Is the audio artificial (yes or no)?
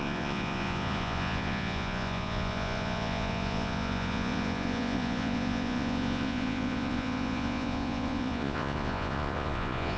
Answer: yes